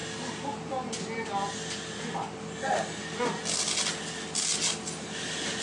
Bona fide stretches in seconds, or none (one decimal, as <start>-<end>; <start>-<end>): 0.0-5.6